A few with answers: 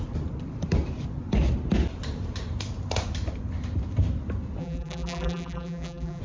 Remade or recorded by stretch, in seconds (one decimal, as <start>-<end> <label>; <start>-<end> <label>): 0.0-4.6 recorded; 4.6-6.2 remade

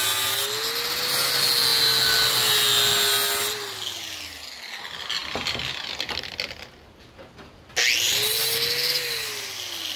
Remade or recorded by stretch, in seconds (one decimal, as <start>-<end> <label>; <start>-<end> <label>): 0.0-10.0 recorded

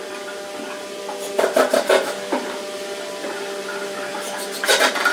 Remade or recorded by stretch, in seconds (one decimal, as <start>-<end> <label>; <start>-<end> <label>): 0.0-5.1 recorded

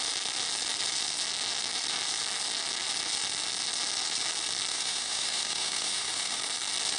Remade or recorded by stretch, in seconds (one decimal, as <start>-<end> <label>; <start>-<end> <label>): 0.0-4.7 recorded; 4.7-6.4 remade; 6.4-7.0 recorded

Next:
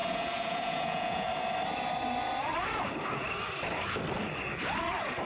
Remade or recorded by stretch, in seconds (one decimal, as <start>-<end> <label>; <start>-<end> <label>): 0.0-1.3 remade; 1.3-5.3 recorded